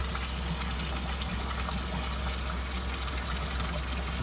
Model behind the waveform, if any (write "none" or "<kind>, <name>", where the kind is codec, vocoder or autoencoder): none